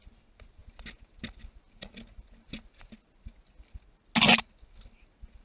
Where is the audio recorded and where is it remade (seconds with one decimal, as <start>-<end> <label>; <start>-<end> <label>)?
0.0-5.4 recorded